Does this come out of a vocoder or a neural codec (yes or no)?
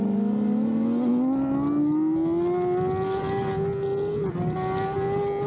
no